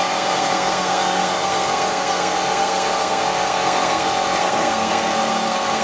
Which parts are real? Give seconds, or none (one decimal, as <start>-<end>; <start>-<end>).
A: none